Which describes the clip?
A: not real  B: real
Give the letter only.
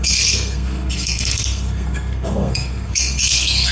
A